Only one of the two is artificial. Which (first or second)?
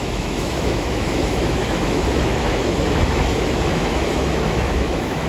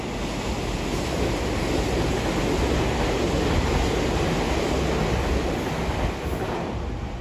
first